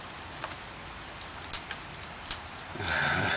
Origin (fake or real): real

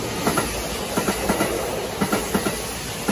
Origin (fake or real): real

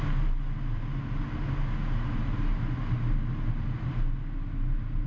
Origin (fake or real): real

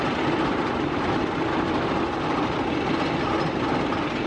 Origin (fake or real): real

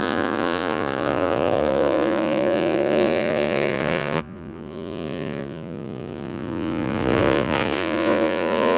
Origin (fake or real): fake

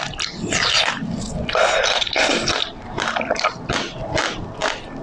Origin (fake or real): real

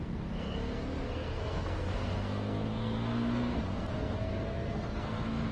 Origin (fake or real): fake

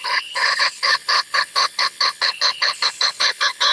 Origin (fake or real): fake